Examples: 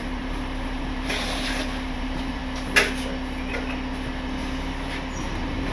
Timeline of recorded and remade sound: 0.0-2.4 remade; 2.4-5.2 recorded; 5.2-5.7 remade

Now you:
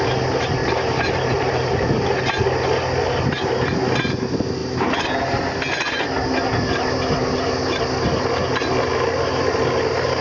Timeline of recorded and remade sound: 0.0-0.6 recorded; 0.6-2.2 remade; 2.2-7.2 recorded; 7.2-7.8 remade; 7.8-10.2 recorded

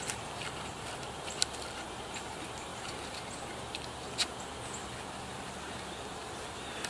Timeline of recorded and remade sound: 0.0-6.9 recorded

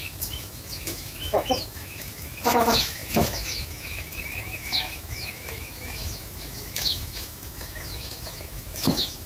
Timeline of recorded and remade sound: 0.0-9.3 remade

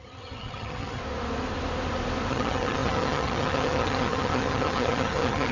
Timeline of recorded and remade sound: 0.0-1.0 remade; 1.0-2.3 recorded; 2.3-5.5 remade

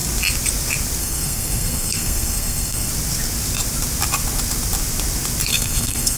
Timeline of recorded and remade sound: 0.0-1.0 recorded; 1.0-2.9 remade; 2.9-5.5 recorded; 5.5-6.2 remade

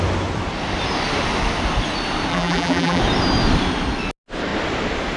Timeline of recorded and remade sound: 0.0-2.3 recorded; 2.3-3.0 remade; 3.0-5.2 recorded